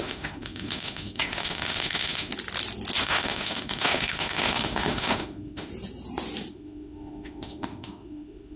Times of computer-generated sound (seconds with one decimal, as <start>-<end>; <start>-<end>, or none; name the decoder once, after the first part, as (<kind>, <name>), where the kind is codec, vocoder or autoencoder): 0.0-2.3 (autoencoder, DAC-VAE); 3.0-5.7; 6.5-8.6

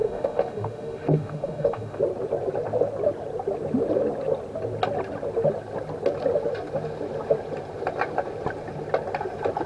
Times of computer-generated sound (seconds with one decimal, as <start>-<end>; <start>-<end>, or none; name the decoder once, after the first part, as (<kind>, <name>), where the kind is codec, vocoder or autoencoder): 0.0-2.0 (autoencoder, DAC-VAE)

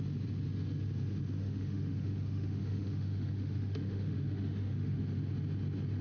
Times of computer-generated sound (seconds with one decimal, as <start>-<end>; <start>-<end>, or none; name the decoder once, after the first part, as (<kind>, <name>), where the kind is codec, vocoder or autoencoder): 1.4-5.0 (autoencoder, DAC-VAE)

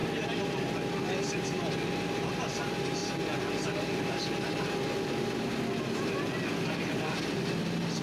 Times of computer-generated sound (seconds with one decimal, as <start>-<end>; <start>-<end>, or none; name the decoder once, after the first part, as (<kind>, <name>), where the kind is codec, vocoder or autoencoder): none